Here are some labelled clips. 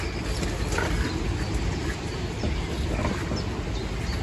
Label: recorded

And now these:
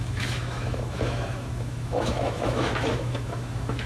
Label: remade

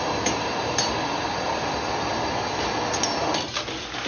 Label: recorded